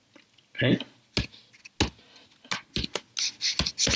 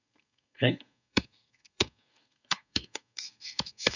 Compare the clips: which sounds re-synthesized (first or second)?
second